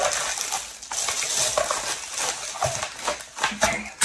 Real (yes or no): yes